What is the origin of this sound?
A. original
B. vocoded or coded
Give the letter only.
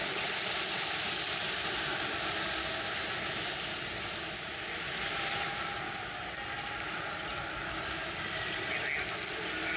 A